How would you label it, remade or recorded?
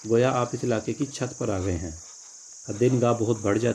recorded